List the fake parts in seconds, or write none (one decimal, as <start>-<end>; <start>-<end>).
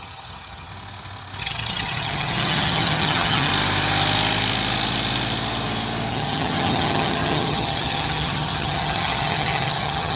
0.0-0.7; 1.4-3.5; 6.1-10.2